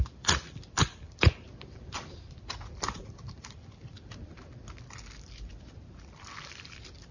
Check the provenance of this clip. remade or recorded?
remade